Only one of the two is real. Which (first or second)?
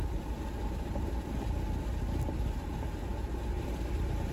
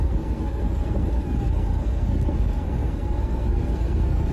first